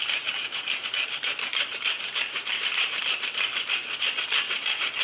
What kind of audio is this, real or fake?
fake